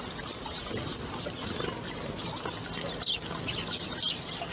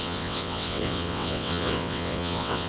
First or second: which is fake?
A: second